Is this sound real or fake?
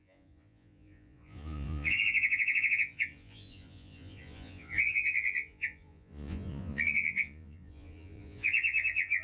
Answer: fake